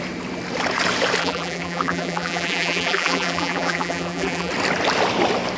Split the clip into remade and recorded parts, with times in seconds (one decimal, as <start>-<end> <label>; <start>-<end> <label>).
0.0-1.2 recorded; 1.2-4.5 remade; 4.5-5.6 recorded